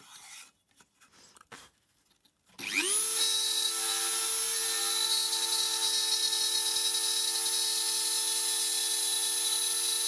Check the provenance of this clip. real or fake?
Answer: real